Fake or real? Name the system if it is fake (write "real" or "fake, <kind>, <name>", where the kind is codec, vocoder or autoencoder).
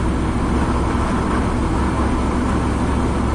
real